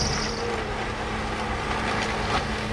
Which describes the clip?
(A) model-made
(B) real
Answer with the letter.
B